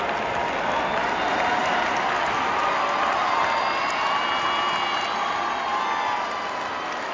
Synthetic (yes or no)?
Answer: no